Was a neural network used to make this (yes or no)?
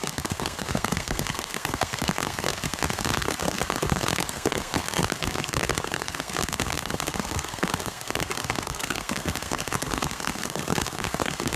yes